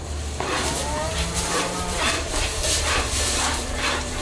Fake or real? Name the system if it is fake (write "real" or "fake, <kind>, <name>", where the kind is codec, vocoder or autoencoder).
fake, vocoder, BigVGAN v2